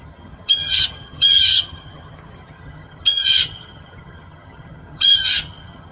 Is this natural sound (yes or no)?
no